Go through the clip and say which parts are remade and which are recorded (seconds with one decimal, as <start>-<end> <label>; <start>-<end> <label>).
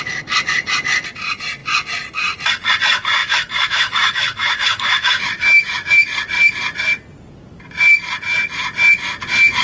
0.0-3.2 recorded; 3.2-5.9 remade; 5.9-9.6 recorded